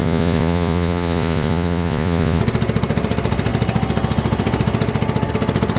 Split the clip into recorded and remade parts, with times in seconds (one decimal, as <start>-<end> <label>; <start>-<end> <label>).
0.0-2.4 remade; 2.4-5.8 recorded